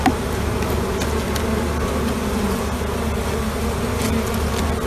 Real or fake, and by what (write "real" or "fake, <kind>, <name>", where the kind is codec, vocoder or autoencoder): real